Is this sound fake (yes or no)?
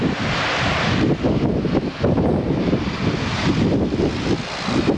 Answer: yes